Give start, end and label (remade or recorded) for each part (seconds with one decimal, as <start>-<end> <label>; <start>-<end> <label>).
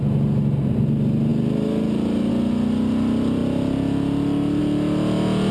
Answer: 0.0-5.5 recorded